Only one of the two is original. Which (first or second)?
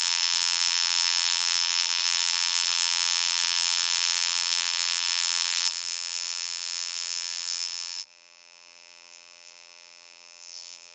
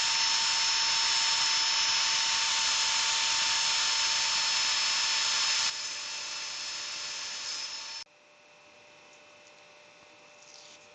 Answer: second